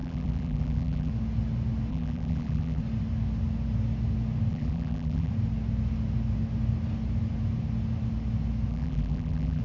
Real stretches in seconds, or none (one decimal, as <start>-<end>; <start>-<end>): 1.1-1.9; 2.8-4.5; 5.3-8.7